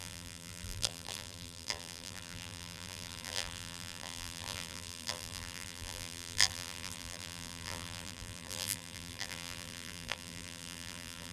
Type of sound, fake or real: fake